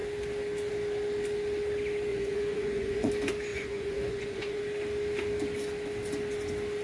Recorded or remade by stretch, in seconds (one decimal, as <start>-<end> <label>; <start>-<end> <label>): 0.0-2.1 recorded; 2.1-3.1 remade; 3.1-3.5 recorded; 3.5-4.6 remade; 4.6-6.8 recorded